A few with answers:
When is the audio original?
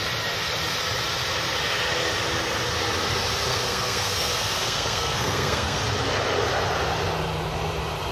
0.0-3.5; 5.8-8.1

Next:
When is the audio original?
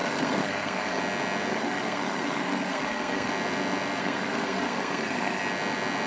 1.0-1.5; 3.3-4.0; 5.4-6.1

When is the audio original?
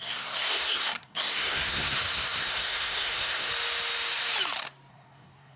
3.5-4.9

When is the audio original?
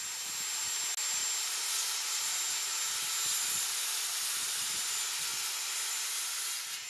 0.0-6.9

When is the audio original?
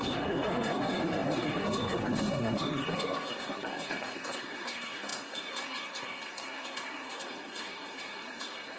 none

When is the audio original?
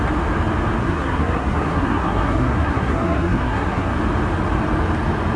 0.0-0.8; 4.0-5.4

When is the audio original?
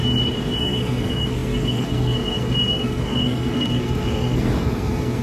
0.0-0.6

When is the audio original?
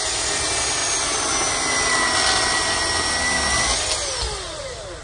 0.0-5.0